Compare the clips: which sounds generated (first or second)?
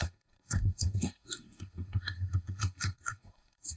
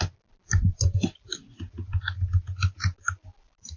first